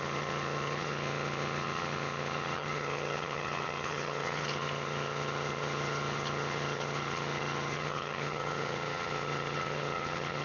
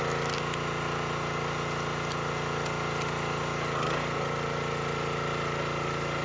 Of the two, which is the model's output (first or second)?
first